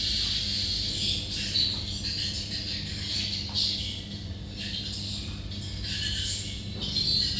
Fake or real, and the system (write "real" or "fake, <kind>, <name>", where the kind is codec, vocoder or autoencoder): real